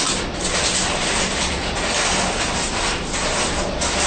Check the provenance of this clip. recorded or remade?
recorded